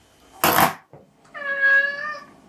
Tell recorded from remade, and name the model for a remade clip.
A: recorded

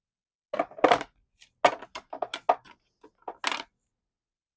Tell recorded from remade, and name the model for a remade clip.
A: recorded